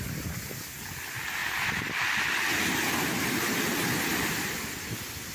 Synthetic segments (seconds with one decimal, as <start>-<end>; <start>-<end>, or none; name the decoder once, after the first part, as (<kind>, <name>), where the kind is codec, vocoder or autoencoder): 4.1-4.7 (vocoder, BigVGAN v2)